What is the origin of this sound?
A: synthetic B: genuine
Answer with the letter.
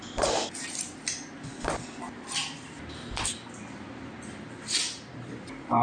B